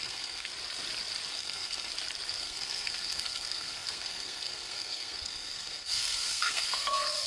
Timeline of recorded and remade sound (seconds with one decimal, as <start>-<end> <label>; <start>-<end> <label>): 0.0-0.5 remade; 0.5-1.3 recorded; 1.3-1.9 remade; 1.9-2.4 recorded; 2.4-7.3 remade